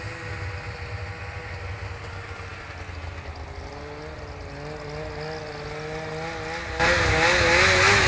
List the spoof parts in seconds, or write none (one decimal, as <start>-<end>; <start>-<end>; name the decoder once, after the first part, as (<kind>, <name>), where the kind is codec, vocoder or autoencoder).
none